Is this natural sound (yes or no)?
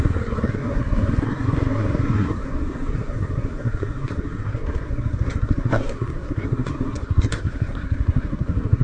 no